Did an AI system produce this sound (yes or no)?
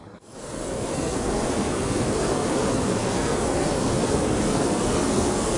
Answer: yes